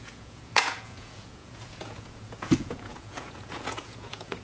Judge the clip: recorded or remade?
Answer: remade